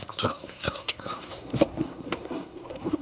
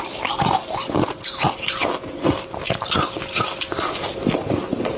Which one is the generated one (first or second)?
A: first